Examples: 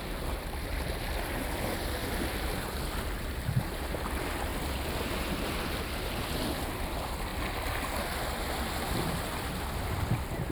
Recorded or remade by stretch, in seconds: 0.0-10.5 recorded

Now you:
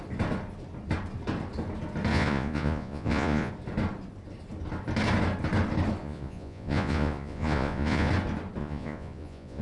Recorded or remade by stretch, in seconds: 0.0-2.1 recorded; 2.1-3.5 remade; 3.5-6.0 recorded; 6.0-8.1 remade; 8.1-8.6 recorded; 8.6-9.6 remade

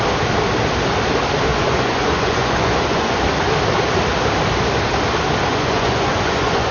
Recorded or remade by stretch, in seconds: 0.0-1.5 recorded; 1.5-3.2 remade; 3.2-5.5 recorded; 5.5-6.7 remade

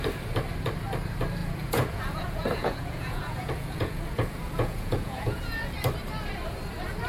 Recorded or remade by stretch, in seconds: 0.0-1.4 recorded; 1.4-5.7 remade; 5.7-7.1 recorded

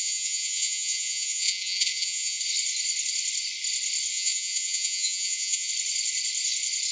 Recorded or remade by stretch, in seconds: 0.0-2.4 remade; 2.4-4.1 recorded; 4.1-5.7 remade; 5.7-6.9 recorded

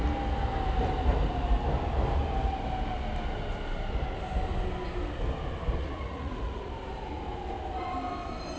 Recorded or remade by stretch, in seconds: 0.0-5.8 recorded; 5.8-6.7 remade; 6.7-8.6 recorded

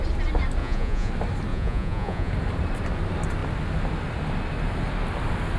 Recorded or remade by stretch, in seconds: 0.0-0.6 recorded; 0.6-1.1 remade; 1.1-1.5 recorded; 1.5-2.3 remade; 2.3-5.6 recorded

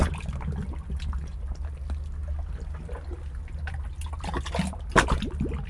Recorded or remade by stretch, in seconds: 0.0-5.7 recorded